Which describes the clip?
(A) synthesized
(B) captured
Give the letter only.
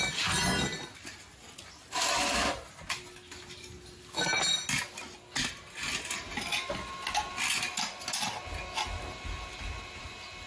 B